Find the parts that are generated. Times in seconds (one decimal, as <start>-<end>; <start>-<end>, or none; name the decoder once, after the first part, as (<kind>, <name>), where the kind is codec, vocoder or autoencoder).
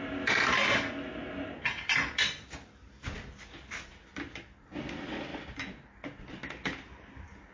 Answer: none